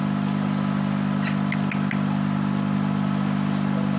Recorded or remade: recorded